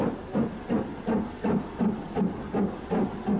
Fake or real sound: real